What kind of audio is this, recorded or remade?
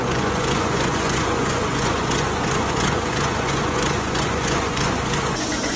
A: remade